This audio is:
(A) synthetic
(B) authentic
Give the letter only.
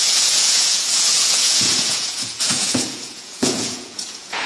A